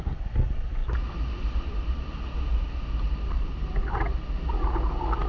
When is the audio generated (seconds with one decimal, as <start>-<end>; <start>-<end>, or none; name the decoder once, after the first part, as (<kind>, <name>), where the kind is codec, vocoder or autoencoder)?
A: none